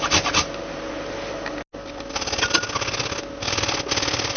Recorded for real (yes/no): yes